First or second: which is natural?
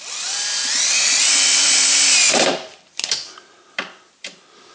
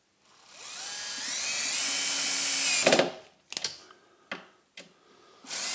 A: second